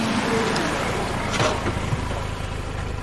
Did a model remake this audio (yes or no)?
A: yes